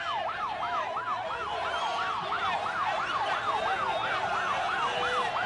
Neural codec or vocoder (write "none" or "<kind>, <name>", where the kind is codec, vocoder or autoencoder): none